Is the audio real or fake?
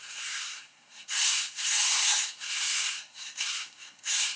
fake